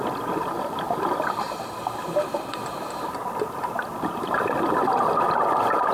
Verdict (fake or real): real